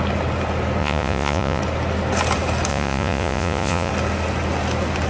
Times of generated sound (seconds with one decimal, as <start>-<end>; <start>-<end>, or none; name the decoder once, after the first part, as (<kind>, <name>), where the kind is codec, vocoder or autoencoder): 0.8-1.6 (vocoder, Vocos); 2.7-3.9